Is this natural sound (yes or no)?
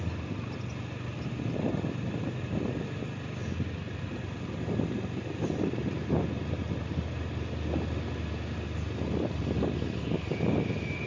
yes